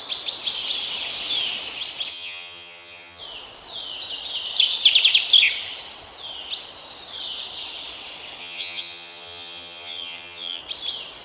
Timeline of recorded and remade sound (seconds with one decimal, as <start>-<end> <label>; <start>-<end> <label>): 0.0-2.1 recorded; 2.1-3.2 remade; 3.2-8.4 recorded; 8.4-10.6 remade; 10.6-11.2 recorded